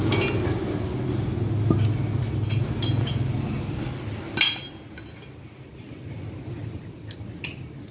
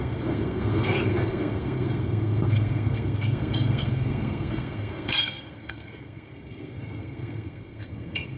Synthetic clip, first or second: second